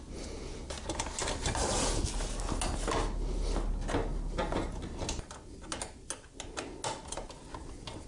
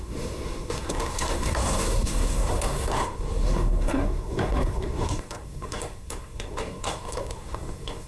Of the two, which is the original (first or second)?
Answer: first